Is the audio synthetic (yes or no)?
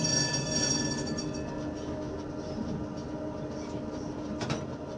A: no